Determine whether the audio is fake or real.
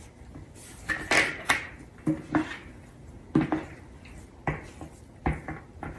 real